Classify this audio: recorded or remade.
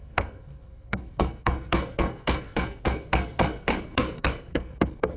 remade